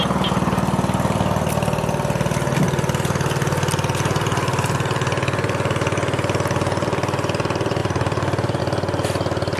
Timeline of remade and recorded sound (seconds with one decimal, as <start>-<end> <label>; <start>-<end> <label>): 0.0-7.8 recorded; 7.8-8.6 remade; 8.6-9.6 recorded